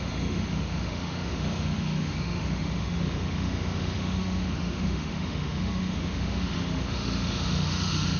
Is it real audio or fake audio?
fake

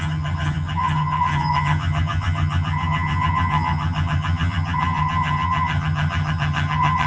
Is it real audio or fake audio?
fake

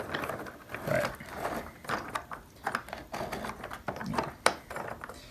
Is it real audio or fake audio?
real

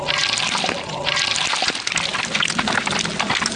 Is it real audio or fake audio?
real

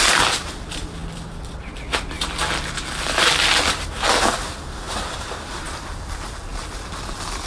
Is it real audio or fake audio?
real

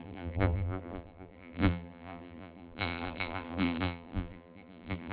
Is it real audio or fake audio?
fake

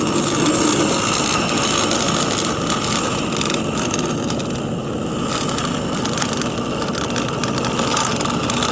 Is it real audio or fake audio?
real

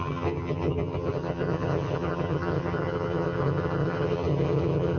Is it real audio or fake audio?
fake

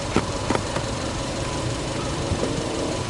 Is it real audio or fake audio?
fake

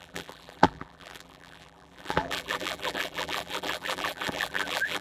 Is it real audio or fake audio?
fake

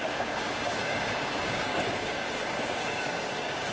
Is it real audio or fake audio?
fake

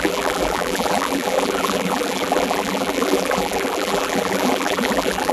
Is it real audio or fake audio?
fake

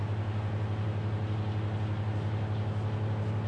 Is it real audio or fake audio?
real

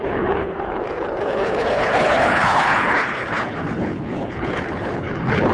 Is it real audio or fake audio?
fake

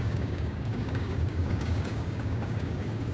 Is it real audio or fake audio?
fake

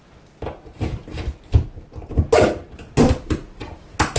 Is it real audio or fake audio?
real